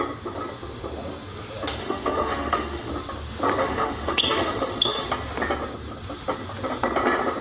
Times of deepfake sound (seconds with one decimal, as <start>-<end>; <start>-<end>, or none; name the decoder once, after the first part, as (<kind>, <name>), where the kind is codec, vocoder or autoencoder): 1.8-2.9 (autoencoder, DAC-VAE); 3.6-5.1

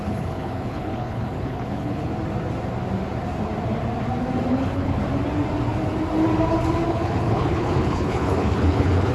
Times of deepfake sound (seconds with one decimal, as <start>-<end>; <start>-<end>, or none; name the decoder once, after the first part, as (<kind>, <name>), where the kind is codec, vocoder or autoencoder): 0.0-2.1 (codec, HILCodec); 4.5-5.0; 6.9-9.1

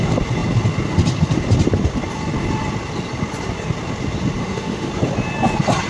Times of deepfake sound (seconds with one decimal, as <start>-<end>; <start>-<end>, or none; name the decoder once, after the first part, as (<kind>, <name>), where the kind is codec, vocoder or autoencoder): 4.4-4.9 (autoencoder, DAC-VAE)

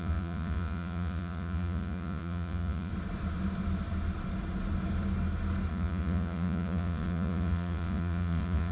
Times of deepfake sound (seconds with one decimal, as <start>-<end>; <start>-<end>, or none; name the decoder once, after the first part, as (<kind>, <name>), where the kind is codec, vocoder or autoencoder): 0.0-2.9 (vocoder, Vocos); 5.7-8.7

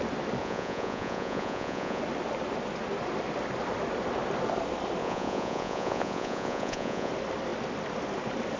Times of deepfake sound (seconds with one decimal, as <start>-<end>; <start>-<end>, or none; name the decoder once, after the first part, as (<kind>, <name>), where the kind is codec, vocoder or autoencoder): 0.4-2.0 (vocoder, Vocos); 5.0-7.1

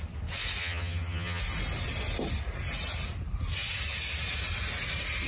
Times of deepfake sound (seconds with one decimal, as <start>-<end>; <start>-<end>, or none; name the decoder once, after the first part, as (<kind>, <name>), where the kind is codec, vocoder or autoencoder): 0.6-1.4 (vocoder, HiFi-GAN)

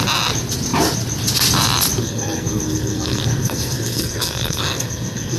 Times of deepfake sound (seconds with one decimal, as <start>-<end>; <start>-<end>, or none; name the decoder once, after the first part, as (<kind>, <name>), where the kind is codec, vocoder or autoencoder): 2.0-5.4 (codec, SNAC)

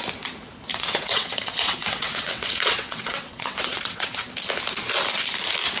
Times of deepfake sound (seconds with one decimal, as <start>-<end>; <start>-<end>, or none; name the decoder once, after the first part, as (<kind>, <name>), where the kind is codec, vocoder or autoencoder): 0.7-4.2 (vocoder, WaveNeXt)